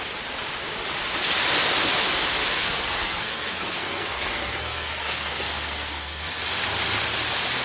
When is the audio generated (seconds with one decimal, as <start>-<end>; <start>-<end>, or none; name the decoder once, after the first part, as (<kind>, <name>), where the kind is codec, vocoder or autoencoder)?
2.4-6.4 (codec, SNAC)